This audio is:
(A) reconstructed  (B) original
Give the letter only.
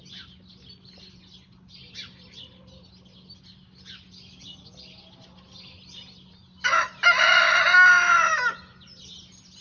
B